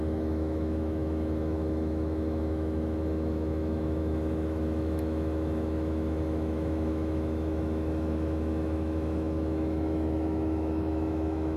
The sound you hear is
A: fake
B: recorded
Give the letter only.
A